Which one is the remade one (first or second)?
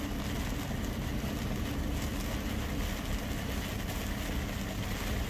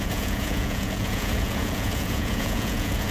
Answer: second